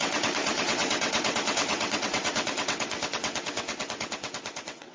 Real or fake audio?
fake